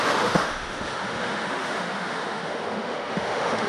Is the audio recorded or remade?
remade